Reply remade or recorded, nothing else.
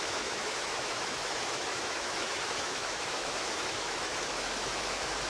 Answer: remade